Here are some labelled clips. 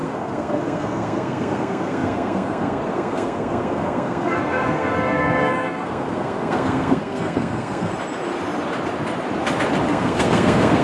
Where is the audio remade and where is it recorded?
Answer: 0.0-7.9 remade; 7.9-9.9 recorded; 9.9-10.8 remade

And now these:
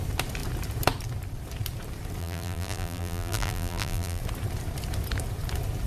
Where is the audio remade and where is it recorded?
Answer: 0.0-2.2 recorded; 2.2-4.2 remade; 4.2-5.9 recorded

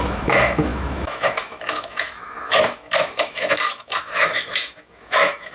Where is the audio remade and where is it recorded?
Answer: 0.0-5.5 remade